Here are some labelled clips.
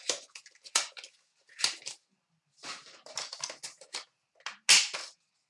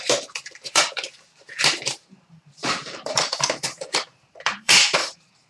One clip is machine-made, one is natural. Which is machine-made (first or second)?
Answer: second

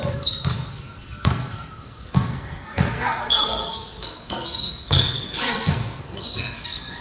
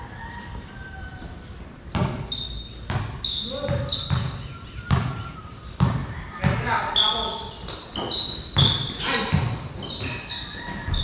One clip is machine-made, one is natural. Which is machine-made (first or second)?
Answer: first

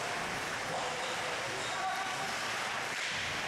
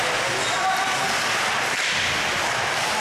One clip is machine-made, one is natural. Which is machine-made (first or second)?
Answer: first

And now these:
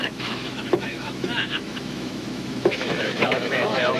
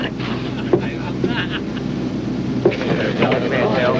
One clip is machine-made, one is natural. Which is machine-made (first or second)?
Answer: first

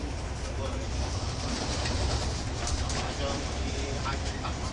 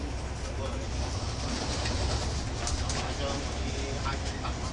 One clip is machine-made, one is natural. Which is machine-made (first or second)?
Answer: first